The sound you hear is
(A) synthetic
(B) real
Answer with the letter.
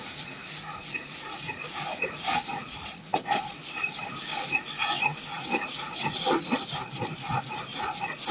A